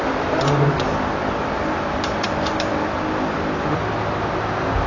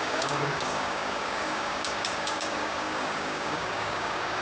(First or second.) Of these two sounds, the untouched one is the first